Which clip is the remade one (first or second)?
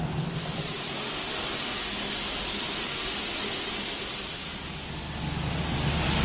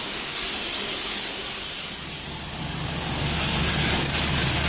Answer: second